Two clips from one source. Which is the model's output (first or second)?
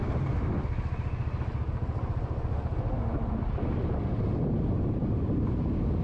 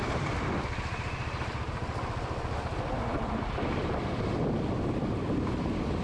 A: second